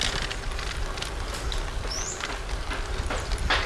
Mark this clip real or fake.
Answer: real